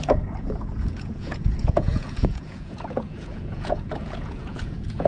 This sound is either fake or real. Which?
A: fake